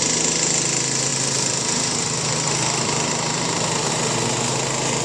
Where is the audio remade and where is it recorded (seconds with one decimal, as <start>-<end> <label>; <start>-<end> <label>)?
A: 0.0-1.1 recorded; 1.1-3.9 remade; 3.9-5.0 recorded